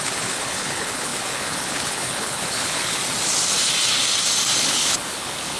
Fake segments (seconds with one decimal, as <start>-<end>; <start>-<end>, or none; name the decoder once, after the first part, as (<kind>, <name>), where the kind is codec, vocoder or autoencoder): 0.0-3.0 (codec, HILCodec); 4.6-5.6